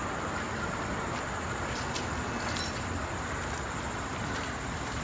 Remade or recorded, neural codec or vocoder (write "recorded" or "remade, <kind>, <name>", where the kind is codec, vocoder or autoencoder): recorded